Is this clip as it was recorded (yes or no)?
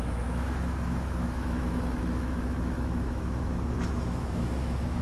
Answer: no